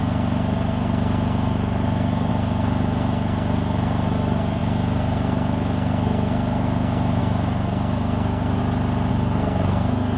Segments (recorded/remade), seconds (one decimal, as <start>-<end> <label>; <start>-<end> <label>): 0.0-8.6 remade; 8.6-9.1 recorded; 9.1-10.2 remade